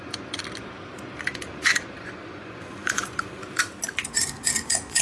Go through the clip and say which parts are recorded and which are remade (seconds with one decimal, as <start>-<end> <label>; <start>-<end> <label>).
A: 0.0-0.4 remade; 0.4-1.2 recorded; 1.2-3.4 remade; 3.4-4.1 recorded; 4.1-5.0 remade